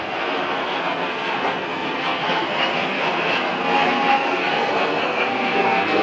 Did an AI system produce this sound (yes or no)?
yes